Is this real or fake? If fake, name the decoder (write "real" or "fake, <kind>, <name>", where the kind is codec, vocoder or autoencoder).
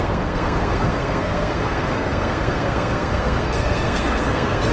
fake, codec, SNAC